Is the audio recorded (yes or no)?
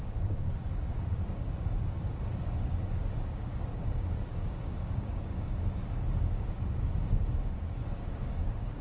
no